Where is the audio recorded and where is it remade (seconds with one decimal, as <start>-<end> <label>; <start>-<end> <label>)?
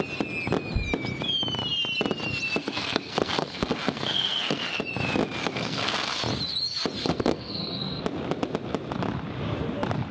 0.0-2.6 recorded; 2.6-4.8 remade; 4.8-5.4 recorded; 5.4-6.2 remade; 6.2-7.0 recorded; 7.0-8.0 remade; 8.0-10.1 recorded